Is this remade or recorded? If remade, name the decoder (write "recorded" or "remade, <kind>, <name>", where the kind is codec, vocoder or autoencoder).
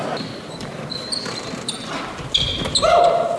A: recorded